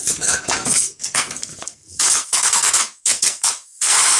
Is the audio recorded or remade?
remade